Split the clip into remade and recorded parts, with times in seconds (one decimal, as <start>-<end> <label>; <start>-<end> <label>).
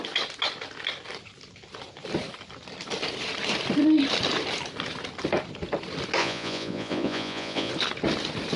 0.0-6.2 recorded; 6.2-7.7 remade; 7.7-8.6 recorded